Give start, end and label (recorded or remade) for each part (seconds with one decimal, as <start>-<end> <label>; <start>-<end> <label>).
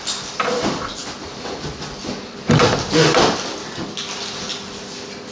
0.0-5.3 recorded